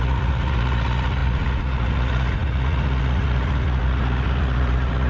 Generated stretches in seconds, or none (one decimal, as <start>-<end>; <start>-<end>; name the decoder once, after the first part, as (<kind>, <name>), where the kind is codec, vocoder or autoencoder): 0.0-5.1 (vocoder, Vocos)

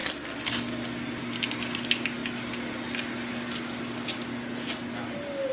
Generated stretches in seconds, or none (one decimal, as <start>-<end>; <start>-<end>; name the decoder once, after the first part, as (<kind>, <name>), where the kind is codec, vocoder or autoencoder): none

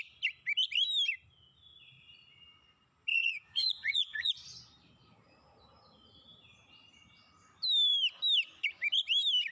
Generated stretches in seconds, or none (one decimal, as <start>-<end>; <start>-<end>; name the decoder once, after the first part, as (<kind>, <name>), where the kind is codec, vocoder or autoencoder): 3.1-4.3 (vocoder, Vocos)

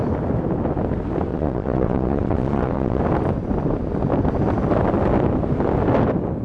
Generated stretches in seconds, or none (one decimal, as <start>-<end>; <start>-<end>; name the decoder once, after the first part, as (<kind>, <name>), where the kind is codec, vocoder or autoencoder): 1.3-3.0 (vocoder, Vocos)